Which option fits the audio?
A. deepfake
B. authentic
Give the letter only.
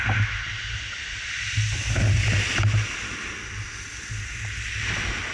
B